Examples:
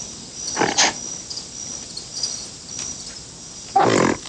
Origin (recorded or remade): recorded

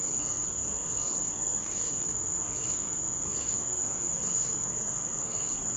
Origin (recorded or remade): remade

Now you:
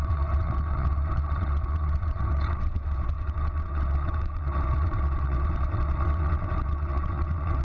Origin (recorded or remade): remade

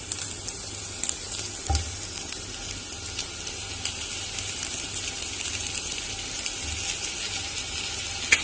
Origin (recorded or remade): recorded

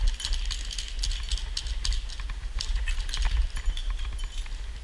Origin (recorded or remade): recorded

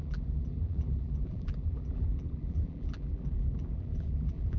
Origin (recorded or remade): remade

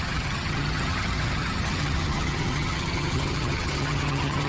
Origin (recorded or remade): remade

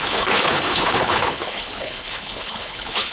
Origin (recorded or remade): remade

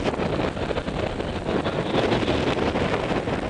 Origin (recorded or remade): recorded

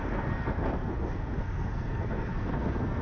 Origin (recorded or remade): remade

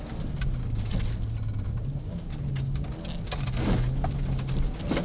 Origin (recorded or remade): recorded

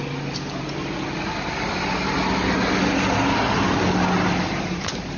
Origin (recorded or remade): recorded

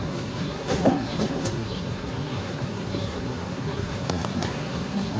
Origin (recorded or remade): remade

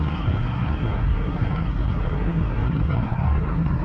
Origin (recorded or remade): remade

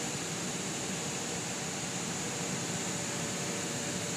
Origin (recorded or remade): remade